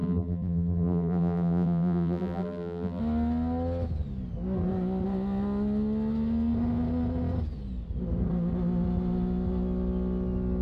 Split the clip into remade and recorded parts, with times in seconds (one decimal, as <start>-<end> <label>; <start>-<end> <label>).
0.0-3.0 remade; 3.0-10.6 recorded